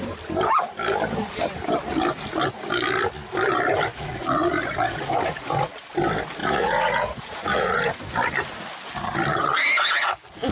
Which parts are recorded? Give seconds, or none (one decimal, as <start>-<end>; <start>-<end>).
0.0-3.9; 5.7-6.4; 8.0-10.5

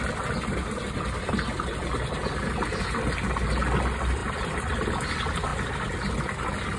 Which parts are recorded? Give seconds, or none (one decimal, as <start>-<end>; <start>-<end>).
0.0-4.2; 4.7-6.8